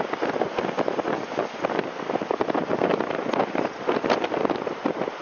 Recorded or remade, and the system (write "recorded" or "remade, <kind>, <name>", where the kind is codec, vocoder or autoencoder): recorded